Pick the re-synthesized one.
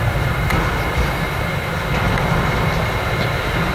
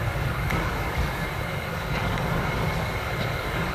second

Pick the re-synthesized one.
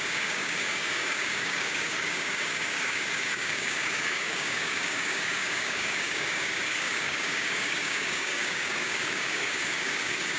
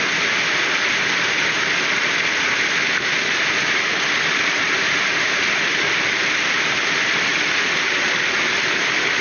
first